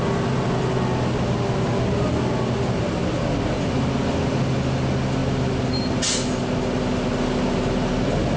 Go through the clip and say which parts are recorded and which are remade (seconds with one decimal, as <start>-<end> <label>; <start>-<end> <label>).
0.0-8.4 recorded